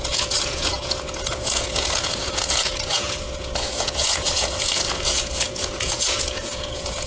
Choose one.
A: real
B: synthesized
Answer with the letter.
B